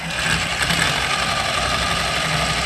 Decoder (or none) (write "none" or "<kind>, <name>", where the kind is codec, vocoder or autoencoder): none